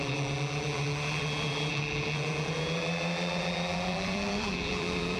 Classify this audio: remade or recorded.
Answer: remade